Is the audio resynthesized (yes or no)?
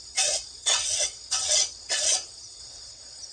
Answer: yes